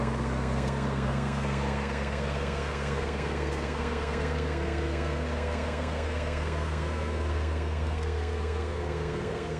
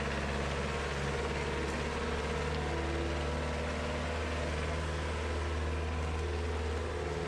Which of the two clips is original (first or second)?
second